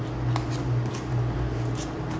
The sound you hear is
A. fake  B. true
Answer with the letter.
B